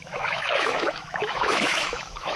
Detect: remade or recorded remade